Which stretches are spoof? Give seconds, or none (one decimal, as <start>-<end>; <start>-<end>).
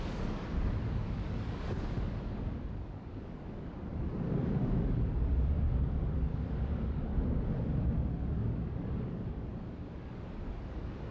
0.0-11.1